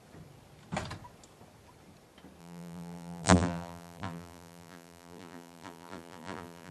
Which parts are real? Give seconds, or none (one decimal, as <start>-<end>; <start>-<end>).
0.0-2.4